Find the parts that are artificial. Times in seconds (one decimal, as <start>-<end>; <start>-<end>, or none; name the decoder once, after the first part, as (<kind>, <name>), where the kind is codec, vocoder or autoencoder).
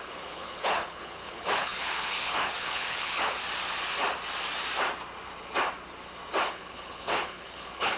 0.0-3.4 (codec, HILCodec); 6.5-8.0